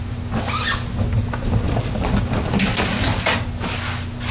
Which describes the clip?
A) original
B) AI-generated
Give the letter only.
A